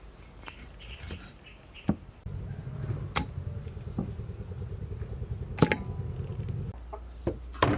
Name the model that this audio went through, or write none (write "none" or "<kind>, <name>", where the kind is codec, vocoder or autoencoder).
none